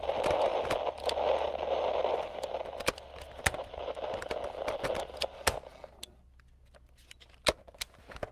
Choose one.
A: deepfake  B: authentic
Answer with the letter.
B